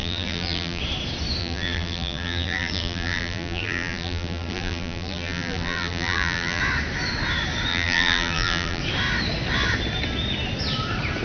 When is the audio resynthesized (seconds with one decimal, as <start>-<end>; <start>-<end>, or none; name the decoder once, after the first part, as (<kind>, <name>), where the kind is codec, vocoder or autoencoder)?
0.0-0.8 (vocoder, BigVGAN v2); 1.4-6.6; 7.7-8.8